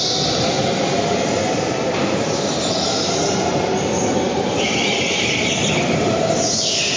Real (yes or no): yes